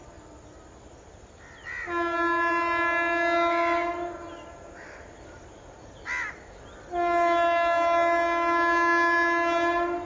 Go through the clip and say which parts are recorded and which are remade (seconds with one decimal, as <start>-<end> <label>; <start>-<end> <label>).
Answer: 0.0-10.1 recorded